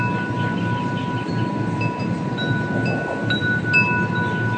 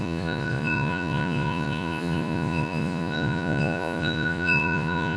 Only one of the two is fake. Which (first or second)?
second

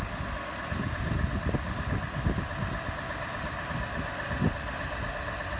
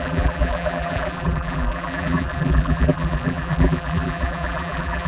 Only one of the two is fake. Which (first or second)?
second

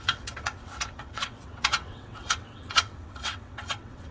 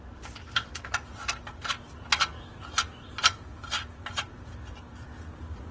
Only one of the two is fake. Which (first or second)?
first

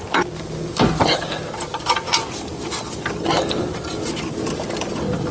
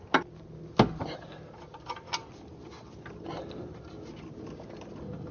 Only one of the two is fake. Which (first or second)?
first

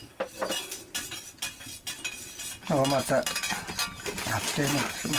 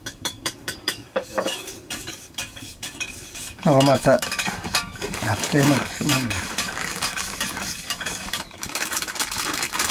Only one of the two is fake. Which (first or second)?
second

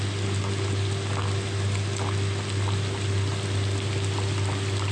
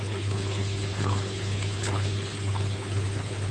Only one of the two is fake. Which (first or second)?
second